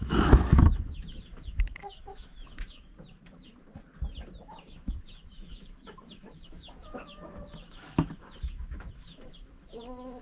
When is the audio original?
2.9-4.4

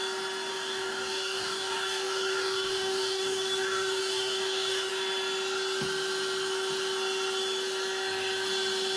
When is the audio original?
0.0-0.5; 4.9-9.0